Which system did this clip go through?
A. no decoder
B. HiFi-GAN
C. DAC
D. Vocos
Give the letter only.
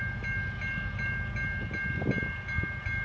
A